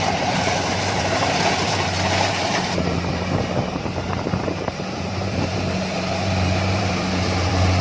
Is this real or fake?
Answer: fake